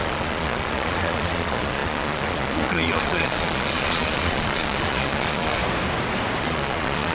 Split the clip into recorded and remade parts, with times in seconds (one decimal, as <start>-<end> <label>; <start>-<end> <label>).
0.0-5.6 remade; 5.6-6.4 recorded; 6.4-7.1 remade